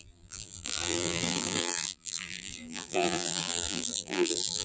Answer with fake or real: fake